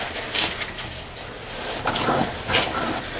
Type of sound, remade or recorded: recorded